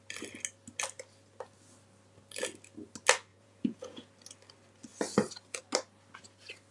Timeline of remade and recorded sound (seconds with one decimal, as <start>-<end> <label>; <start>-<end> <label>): 0.0-3.3 recorded; 3.3-4.1 remade; 4.1-6.7 recorded